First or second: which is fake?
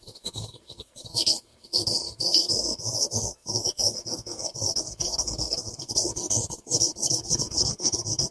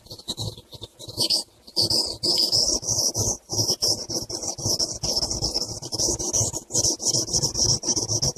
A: first